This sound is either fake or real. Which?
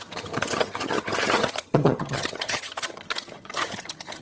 fake